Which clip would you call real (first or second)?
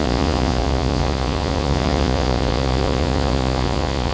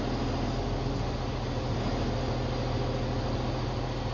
second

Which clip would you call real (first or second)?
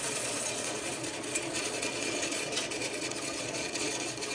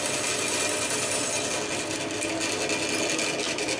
second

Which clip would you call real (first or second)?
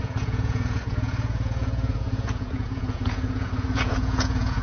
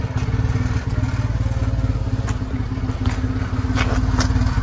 second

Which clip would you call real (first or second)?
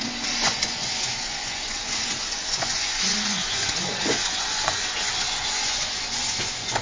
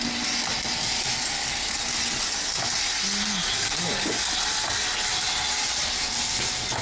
second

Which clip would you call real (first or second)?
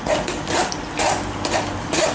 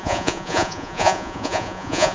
first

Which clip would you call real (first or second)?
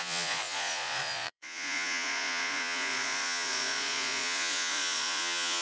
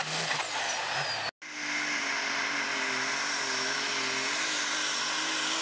second